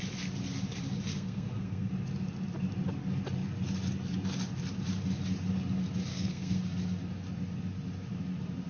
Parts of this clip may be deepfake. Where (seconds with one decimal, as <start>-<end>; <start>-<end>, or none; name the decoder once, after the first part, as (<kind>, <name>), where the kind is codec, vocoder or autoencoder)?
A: 1.1-1.9 (codec, SNAC); 6.1-6.6